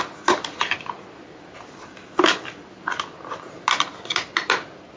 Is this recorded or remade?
remade